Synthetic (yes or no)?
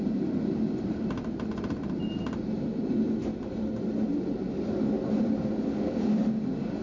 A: no